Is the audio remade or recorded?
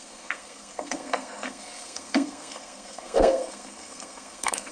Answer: remade